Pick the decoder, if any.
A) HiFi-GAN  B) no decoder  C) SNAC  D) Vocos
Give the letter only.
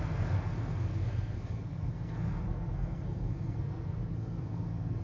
C